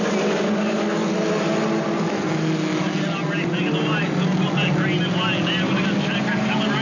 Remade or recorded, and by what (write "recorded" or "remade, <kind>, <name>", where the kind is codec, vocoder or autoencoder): recorded